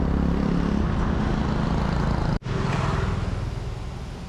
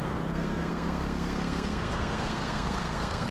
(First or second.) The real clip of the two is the first